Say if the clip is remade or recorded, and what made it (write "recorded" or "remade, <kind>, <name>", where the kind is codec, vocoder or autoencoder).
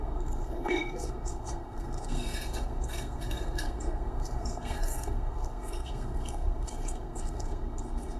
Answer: remade, codec, SNAC